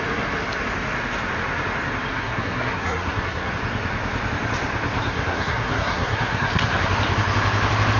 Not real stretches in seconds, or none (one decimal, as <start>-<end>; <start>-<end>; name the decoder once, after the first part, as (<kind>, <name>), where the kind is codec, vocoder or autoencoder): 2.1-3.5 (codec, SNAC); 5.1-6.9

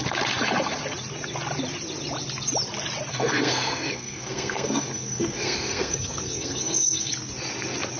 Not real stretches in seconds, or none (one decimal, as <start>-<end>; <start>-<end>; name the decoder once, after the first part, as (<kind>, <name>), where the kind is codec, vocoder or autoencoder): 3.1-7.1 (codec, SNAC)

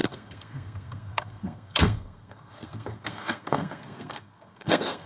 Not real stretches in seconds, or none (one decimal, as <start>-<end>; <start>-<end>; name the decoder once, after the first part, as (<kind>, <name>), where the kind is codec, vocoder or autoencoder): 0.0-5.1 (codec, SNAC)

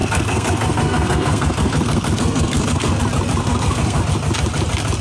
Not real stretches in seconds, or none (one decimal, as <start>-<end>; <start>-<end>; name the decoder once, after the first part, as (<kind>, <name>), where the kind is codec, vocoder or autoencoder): 0.0-3.0 (codec, SNAC); 3.4-4.0

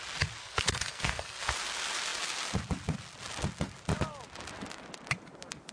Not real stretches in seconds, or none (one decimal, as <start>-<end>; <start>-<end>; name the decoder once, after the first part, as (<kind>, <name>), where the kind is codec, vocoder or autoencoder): 0.4-1.5 (codec, SNAC)